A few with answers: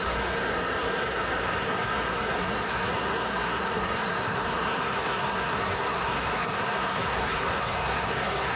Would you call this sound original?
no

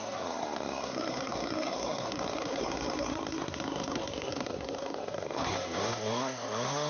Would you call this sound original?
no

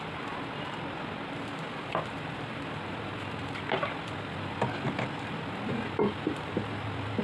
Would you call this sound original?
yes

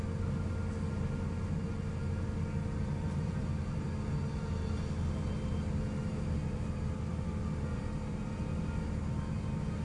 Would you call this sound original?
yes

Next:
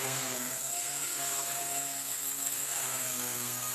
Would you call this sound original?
no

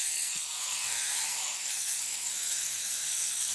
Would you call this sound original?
no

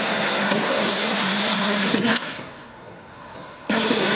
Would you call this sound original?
no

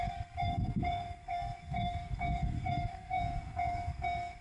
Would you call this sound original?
no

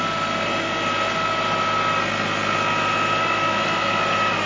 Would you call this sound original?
yes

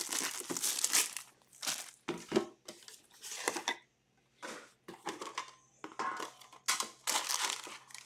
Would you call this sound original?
yes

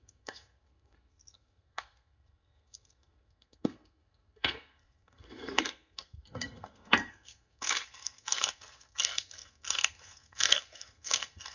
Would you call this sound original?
no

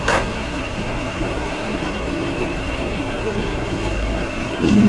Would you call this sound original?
no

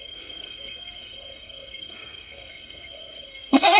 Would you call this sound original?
no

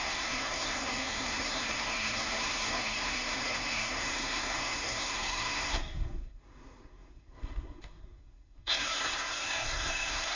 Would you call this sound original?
no